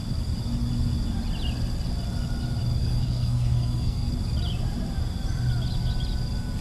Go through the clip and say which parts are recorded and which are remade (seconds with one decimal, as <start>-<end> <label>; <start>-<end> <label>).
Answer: 0.0-2.8 recorded; 2.8-4.1 remade; 4.1-6.6 recorded

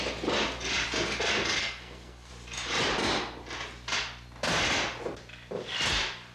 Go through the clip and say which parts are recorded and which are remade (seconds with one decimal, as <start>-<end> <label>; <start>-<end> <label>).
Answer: 0.0-1.6 recorded; 1.6-2.3 remade; 2.3-6.3 recorded

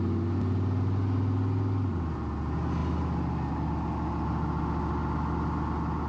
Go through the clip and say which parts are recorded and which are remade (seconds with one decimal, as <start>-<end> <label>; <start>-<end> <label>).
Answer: 0.0-6.1 recorded

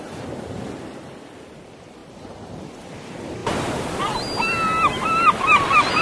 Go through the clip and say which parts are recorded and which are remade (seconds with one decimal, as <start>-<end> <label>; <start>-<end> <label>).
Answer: 0.0-2.0 recorded; 2.0-2.8 remade; 2.8-6.0 recorded

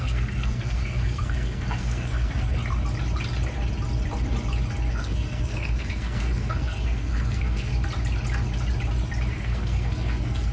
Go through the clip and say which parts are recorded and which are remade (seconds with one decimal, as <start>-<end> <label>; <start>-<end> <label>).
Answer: 0.0-2.6 remade; 2.6-4.9 recorded; 4.9-7.7 remade; 7.7-9.3 recorded; 9.3-10.5 remade